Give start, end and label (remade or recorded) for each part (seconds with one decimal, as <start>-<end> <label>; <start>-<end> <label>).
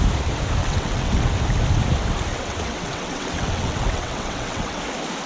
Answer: 0.0-0.6 recorded; 0.6-1.3 remade; 1.3-2.3 recorded; 2.3-4.8 remade; 4.8-5.3 recorded